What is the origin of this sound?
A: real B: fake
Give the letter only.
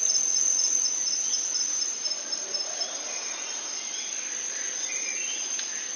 A